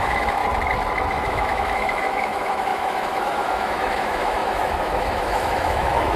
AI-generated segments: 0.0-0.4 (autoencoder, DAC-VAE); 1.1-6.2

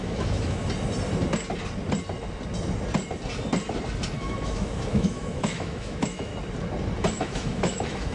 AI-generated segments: 0.0-0.6 (autoencoder, DAC-VAE); 4.2-6.3; 7.0-8.1

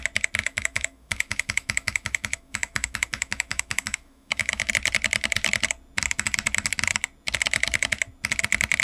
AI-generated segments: 0.4-4.7 (autoencoder, DAC-VAE)

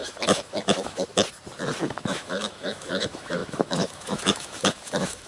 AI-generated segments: 0.0-1.1 (autoencoder, DAC-VAE); 1.8-5.3

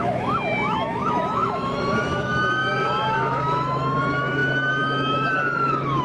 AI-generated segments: 0.0-6.0 (autoencoder, DAC-VAE)

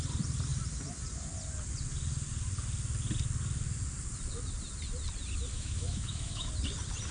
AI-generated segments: 5.5-6.5 (autoencoder, DAC-VAE)

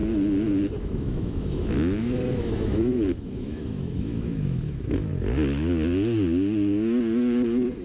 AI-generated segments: 0.8-5.1 (autoencoder, DAC-VAE)

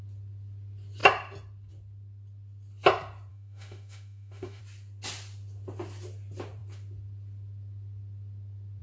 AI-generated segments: 3.3-4.6 (autoencoder, DAC-VAE)